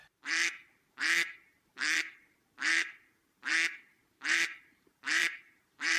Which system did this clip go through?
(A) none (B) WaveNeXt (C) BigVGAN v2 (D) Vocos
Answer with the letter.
C